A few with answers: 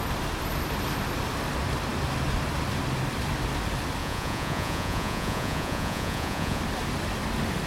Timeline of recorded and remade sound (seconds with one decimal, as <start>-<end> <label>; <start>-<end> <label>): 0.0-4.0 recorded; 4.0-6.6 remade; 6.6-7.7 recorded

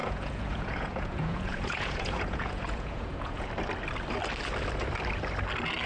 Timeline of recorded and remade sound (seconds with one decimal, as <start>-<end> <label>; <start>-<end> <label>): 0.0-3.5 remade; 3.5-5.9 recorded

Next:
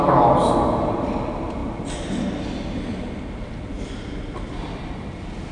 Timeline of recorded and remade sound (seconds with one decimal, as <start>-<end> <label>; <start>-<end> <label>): 0.0-5.5 recorded